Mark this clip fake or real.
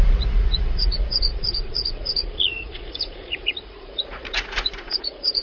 fake